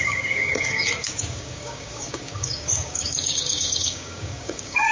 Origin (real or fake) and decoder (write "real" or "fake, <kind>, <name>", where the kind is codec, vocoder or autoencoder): fake, codec, DAC